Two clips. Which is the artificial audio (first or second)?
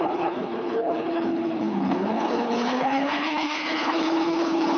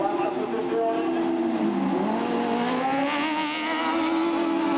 first